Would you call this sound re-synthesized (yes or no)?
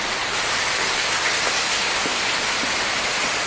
no